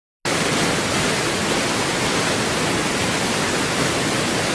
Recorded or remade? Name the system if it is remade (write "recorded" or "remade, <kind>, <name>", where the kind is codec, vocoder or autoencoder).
recorded